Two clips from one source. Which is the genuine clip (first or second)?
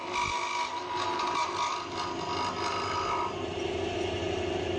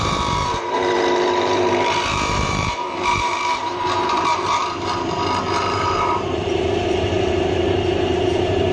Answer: first